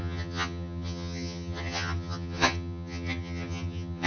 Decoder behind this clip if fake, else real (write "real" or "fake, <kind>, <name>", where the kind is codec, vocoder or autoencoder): fake, vocoder, HiFi-GAN